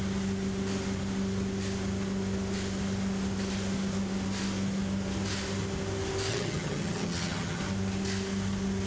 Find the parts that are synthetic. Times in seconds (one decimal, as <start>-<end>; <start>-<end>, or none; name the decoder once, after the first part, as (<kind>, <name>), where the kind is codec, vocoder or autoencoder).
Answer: 6.3-7.6 (vocoder, HiFi-GAN)